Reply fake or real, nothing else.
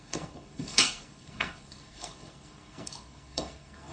fake